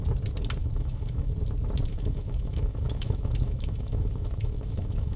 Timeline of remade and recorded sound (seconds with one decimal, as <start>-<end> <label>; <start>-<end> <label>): 0.0-0.6 recorded; 0.6-1.3 remade; 1.3-1.9 recorded; 1.9-5.2 remade